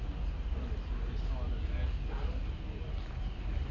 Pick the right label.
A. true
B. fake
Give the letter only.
A